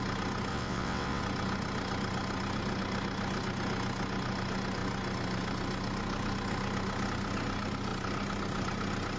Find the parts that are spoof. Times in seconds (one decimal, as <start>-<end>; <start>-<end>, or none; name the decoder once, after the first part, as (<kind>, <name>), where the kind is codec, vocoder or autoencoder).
0.5-1.2 (vocoder, WaveNeXt)